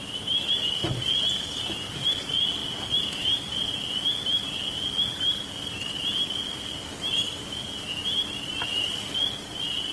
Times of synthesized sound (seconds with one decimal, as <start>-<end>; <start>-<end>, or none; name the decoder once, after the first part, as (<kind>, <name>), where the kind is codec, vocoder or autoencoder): none